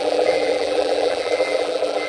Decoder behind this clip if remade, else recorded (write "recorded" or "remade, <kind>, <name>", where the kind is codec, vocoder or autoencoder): remade, vocoder, BigVGAN v2